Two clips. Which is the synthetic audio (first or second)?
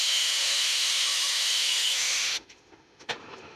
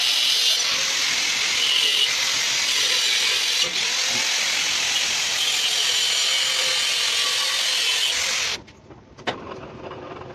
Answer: first